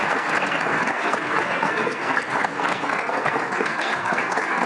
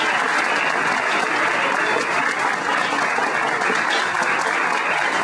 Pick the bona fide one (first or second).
second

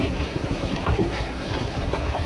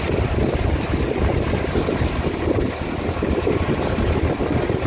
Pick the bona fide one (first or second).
second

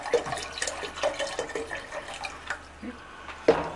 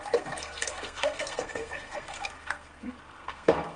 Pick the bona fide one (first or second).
first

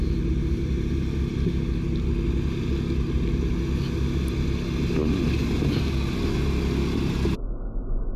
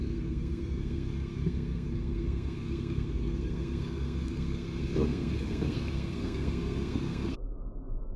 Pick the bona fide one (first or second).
first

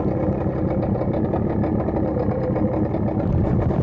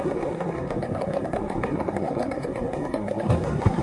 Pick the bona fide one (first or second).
first